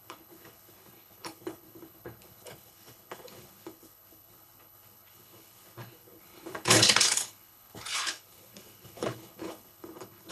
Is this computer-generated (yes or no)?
yes